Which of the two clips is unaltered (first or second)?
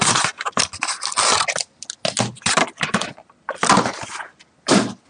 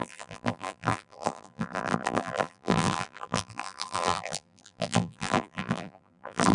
first